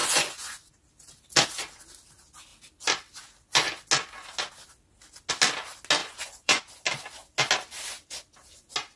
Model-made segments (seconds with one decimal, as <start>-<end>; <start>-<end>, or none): 0.0-0.7; 6.0-6.6